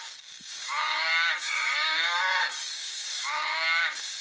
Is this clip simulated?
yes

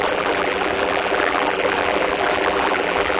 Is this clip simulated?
yes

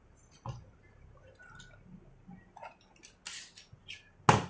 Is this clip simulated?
no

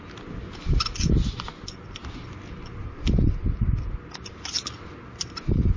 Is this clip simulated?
no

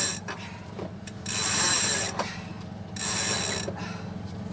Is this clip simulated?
no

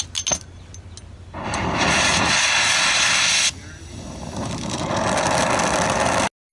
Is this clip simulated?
no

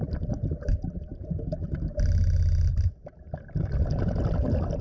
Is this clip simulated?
no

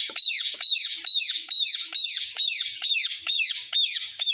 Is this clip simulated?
yes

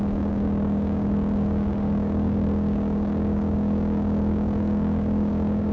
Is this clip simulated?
yes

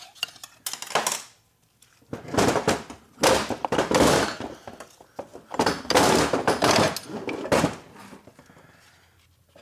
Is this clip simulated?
no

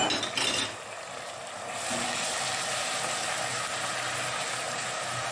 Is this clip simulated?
no